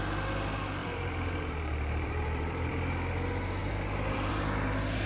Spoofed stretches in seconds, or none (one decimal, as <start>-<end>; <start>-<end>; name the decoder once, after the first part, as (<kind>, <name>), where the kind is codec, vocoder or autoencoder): 0.8-2.8 (vocoder, BigVGAN v2); 3.6-4.3